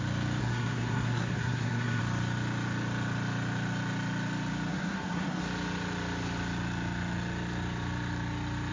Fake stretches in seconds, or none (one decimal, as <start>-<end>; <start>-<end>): 0.4-2.0; 4.7-5.4